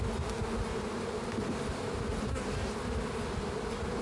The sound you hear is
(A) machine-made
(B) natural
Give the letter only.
B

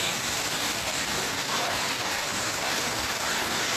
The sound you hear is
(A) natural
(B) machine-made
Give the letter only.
B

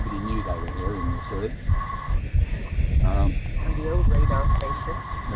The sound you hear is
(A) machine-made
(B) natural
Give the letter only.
B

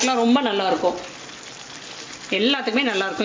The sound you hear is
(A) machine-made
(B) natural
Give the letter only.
B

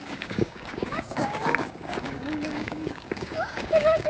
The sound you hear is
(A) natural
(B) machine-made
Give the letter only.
B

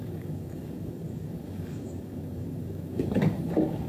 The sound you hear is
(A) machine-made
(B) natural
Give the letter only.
A